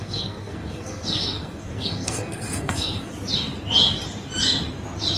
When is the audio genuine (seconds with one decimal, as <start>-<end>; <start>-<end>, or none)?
3.1-5.2